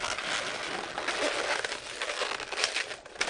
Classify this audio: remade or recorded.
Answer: recorded